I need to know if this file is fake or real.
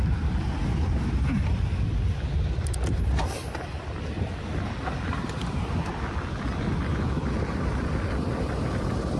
real